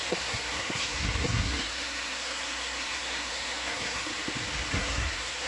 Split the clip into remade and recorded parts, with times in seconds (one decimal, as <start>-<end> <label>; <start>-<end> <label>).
0.0-4.1 remade; 4.1-4.7 recorded; 4.7-5.5 remade